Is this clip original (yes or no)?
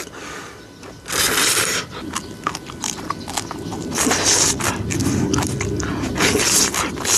yes